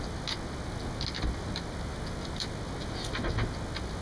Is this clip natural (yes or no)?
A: yes